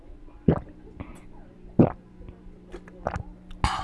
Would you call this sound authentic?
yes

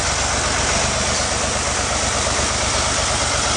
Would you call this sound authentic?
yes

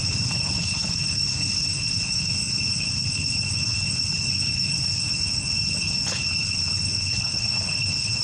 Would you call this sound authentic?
no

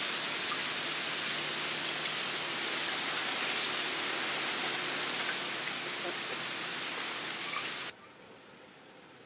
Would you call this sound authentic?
yes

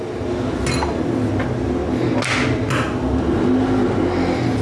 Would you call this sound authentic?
yes